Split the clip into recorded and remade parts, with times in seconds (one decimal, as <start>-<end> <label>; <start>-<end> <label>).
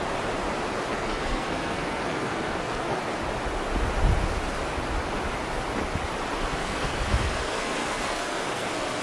0.0-0.9 recorded; 0.9-3.0 remade; 3.0-6.6 recorded; 6.6-9.0 remade